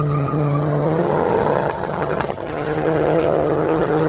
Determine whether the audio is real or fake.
fake